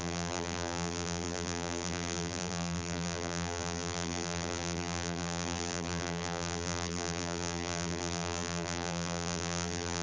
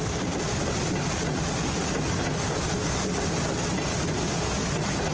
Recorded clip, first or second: second